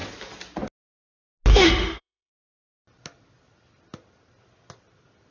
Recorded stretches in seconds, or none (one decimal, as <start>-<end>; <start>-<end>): 0.0-1.5; 2.3-5.3